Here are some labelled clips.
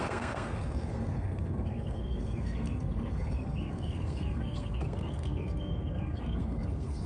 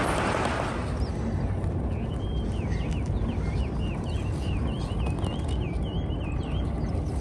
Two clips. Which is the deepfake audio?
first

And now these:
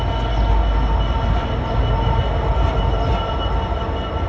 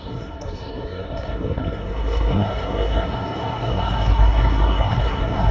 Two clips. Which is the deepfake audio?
second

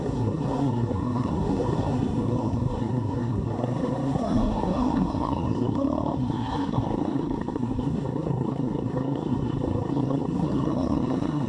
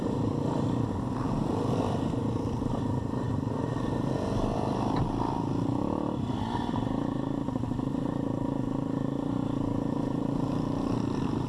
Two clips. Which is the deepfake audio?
first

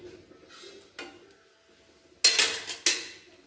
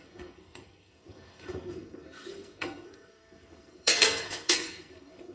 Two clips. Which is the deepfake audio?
second